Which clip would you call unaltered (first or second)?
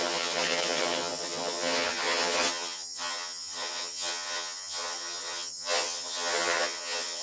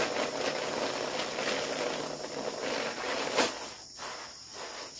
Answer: second